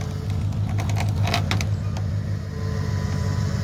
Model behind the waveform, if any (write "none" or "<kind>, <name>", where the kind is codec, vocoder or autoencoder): none